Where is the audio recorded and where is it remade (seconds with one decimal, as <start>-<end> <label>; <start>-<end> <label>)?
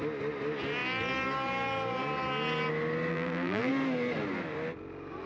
0.0-3.1 recorded; 3.1-3.7 remade; 3.7-5.3 recorded